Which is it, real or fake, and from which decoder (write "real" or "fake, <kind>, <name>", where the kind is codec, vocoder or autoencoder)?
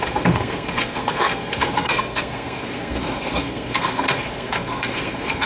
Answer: fake, codec, SNAC